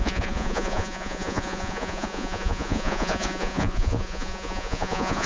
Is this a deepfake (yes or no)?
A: yes